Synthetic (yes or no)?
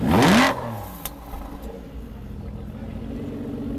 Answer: no